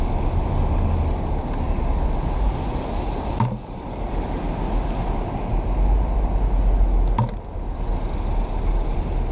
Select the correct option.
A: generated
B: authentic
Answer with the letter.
B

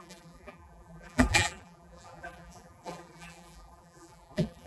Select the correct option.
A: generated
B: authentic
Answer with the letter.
A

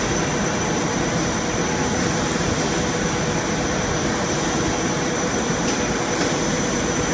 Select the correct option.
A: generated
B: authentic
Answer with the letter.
A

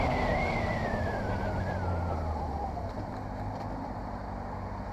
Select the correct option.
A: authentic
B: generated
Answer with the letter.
A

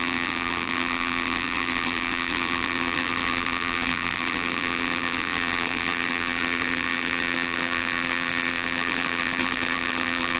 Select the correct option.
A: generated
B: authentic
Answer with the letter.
A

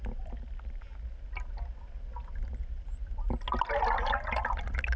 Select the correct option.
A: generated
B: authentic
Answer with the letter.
B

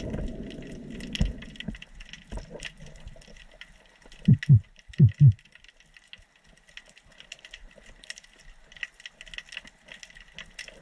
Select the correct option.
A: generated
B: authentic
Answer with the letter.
B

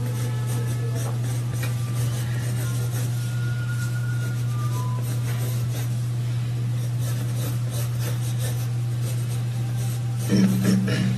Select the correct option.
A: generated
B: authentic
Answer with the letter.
B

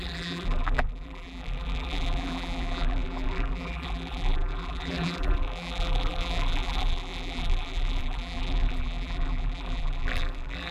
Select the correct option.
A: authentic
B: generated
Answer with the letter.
B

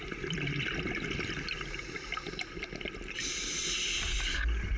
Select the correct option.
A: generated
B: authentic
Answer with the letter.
B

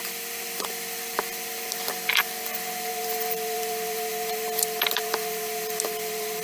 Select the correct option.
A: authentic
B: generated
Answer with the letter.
B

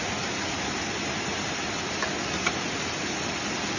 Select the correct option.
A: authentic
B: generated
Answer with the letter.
A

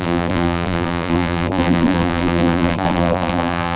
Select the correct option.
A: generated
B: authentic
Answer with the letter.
A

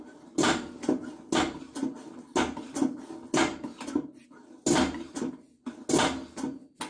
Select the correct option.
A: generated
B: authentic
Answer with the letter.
B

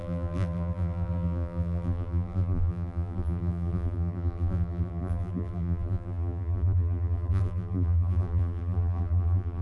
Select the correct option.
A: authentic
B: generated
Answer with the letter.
B